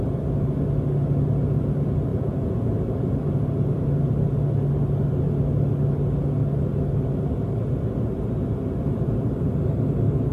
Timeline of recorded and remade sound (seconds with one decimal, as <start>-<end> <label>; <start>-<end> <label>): 0.0-2.1 recorded; 2.1-2.7 remade; 2.7-10.3 recorded